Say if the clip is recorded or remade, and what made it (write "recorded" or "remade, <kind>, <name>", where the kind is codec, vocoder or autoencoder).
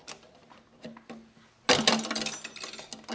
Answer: recorded